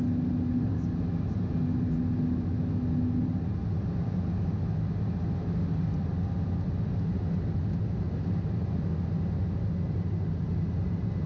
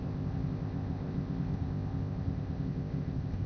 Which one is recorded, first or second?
first